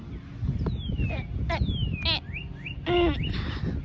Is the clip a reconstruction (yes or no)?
no